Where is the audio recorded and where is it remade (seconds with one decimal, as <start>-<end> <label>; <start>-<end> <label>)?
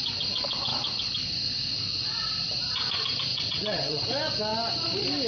0.0-3.3 recorded; 3.3-4.0 remade; 4.0-5.3 recorded